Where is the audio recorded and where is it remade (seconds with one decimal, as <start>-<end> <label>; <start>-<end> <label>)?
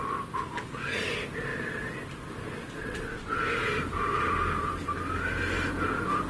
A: 0.0-2.8 recorded; 2.8-3.4 remade; 3.4-6.3 recorded